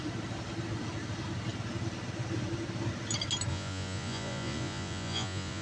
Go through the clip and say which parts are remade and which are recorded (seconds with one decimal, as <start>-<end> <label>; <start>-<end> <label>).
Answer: 0.0-3.5 recorded; 3.5-5.6 remade